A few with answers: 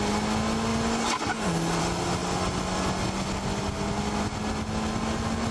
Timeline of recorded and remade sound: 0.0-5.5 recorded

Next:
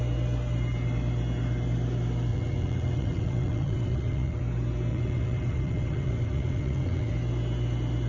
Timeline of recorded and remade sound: 0.0-2.3 recorded; 2.3-4.4 remade; 4.4-4.9 recorded; 4.9-7.1 remade; 7.1-8.1 recorded

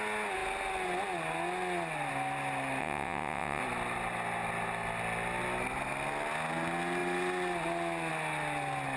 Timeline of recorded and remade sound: 0.0-2.8 recorded; 2.8-3.6 remade; 3.6-9.0 recorded

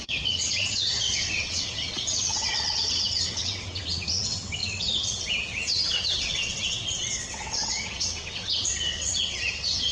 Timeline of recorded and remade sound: 0.0-9.9 remade

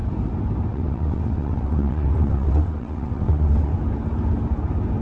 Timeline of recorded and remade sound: 0.0-0.7 recorded; 0.7-3.7 remade; 3.7-5.0 recorded

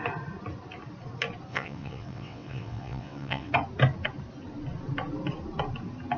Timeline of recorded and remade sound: 0.0-1.5 recorded; 1.5-3.5 remade; 3.5-6.2 recorded

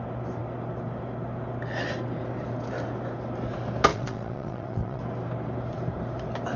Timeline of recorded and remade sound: 0.0-3.9 recorded; 3.9-5.0 remade; 5.0-6.6 recorded